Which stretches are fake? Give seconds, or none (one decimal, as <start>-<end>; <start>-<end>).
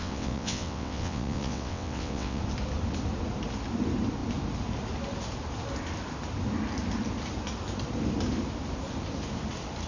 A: 0.0-2.4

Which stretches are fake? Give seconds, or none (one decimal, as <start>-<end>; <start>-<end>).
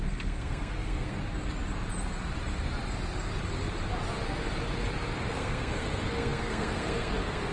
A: 0.0-1.2; 5.3-7.5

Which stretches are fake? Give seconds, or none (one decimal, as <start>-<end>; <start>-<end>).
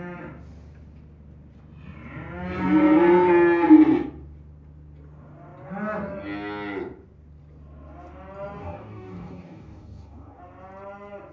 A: 8.6-10.4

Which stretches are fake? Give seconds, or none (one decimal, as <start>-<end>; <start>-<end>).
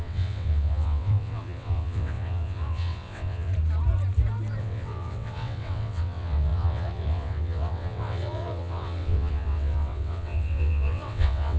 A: 0.0-3.5; 4.6-11.6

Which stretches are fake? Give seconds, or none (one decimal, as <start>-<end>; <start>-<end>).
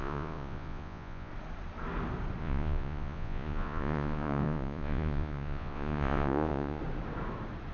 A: 0.0-1.3; 2.4-6.8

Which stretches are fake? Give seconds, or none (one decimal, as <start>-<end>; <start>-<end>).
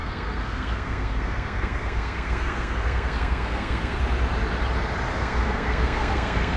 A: 0.0-4.0; 5.1-6.6